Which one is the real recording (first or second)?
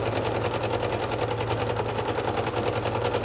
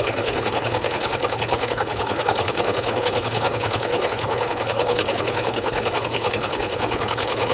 first